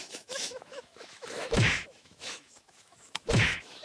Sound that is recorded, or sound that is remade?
remade